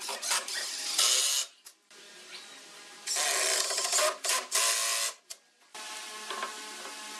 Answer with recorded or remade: recorded